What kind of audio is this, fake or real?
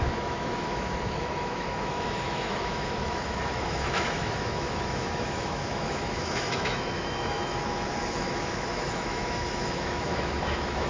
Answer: fake